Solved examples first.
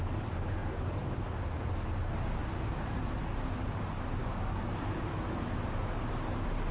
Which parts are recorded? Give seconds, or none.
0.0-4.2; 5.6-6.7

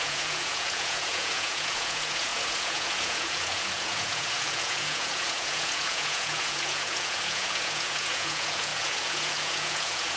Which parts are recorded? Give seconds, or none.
none

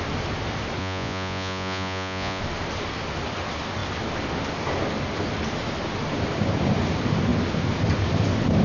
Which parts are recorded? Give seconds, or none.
0.0-0.8; 2.4-8.6

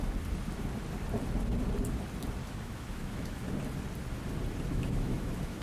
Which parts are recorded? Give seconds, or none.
0.0-2.4; 3.4-4.7

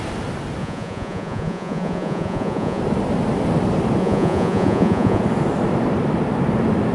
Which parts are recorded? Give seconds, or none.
0.0-0.6; 2.8-4.0; 5.2-6.9

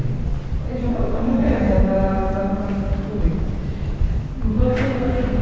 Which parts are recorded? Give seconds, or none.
0.0-0.9; 1.7-4.9

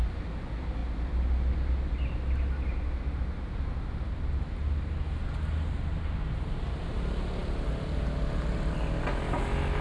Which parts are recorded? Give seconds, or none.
0.0-9.8